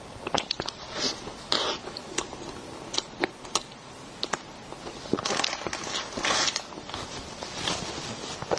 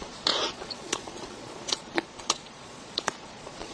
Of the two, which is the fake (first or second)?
second